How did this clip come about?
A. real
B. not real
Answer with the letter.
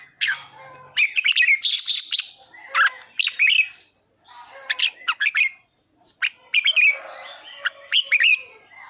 A